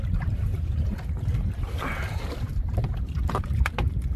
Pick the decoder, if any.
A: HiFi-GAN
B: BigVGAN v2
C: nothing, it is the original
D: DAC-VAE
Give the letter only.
B